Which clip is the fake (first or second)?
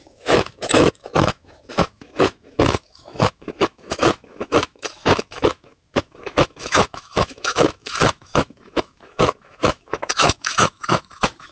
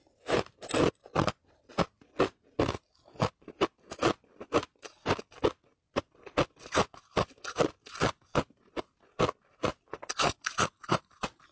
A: first